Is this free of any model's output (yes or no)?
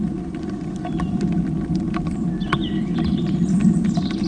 yes